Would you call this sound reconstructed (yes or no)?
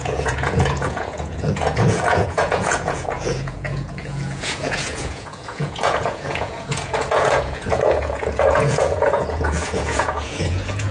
yes